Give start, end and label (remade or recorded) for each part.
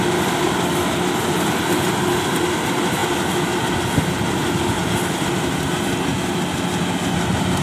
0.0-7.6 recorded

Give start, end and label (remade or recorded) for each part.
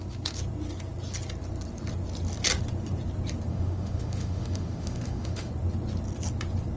0.0-3.5 recorded; 3.5-5.5 remade; 5.5-6.8 recorded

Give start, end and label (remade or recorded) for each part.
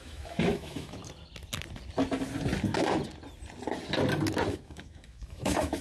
0.0-1.0 remade; 1.0-4.5 recorded; 4.5-5.8 remade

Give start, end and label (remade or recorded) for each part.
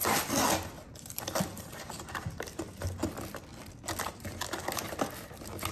0.0-5.7 recorded